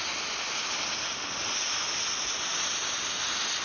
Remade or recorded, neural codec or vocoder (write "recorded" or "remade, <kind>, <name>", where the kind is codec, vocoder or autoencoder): recorded